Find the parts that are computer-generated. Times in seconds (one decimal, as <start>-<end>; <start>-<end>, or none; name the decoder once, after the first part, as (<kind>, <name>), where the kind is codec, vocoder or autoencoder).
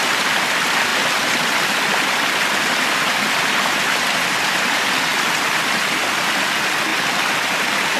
none